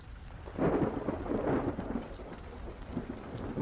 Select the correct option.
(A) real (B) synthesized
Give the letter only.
A